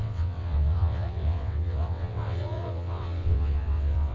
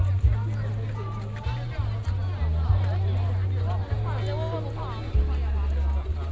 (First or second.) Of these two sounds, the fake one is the first